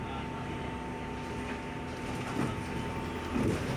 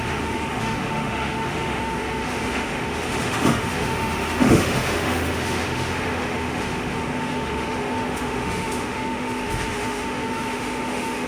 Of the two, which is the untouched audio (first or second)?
first